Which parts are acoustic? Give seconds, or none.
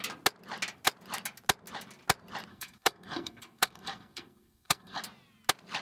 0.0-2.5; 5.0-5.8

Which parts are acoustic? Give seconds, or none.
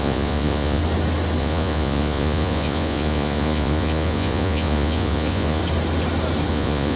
0.8-1.4; 5.6-6.5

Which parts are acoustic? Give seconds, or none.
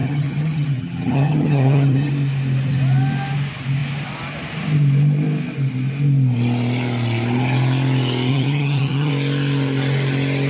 2.1-8.3; 9.1-10.5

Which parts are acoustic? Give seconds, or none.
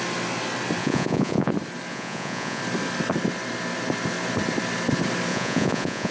0.0-0.8; 1.5-1.9; 2.6-5.3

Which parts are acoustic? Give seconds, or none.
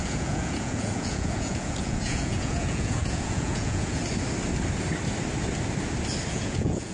4.0-6.3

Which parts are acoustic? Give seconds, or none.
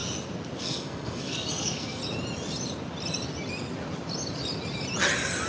0.0-0.6; 2.0-5.5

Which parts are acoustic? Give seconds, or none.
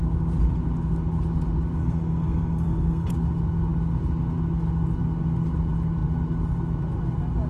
0.0-1.8; 3.1-7.5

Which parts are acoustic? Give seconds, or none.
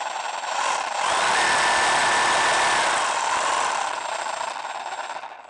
0.0-5.5